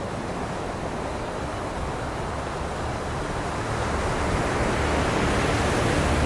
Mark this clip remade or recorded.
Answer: recorded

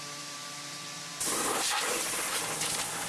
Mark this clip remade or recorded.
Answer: recorded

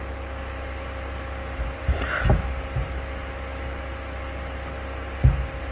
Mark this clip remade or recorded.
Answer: recorded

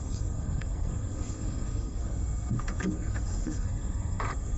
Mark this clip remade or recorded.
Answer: remade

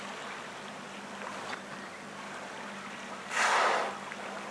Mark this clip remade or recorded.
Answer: recorded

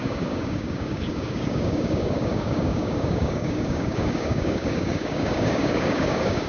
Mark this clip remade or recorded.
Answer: remade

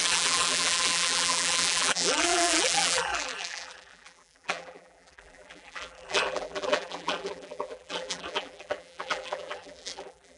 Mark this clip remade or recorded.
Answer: remade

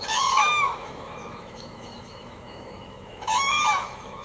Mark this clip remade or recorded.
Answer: remade